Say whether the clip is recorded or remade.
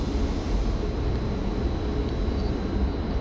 recorded